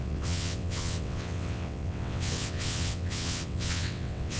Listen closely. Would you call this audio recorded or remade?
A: remade